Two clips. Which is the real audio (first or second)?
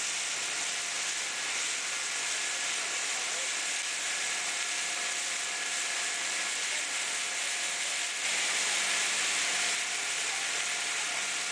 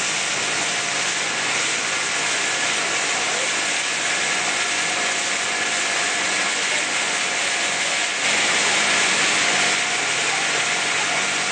first